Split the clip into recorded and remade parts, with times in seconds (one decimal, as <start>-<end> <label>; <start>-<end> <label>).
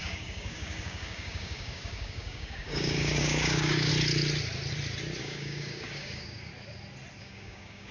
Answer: 0.0-3.9 remade; 3.9-5.2 recorded; 5.2-6.5 remade; 6.5-7.2 recorded; 7.2-7.9 remade